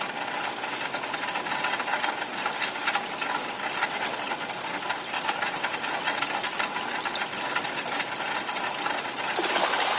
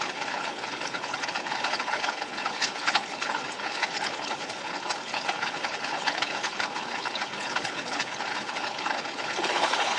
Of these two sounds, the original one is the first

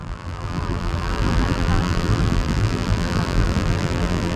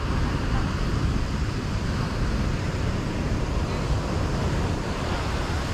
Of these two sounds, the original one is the second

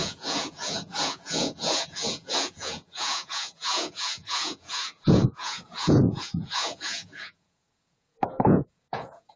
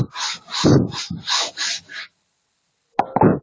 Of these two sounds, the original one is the second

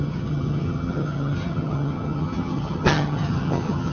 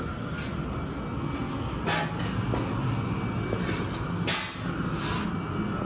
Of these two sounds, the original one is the second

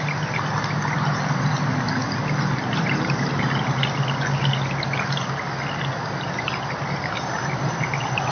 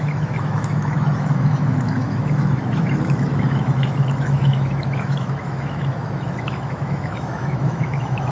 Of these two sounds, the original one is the first